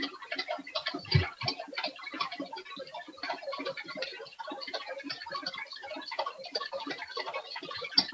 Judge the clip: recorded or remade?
recorded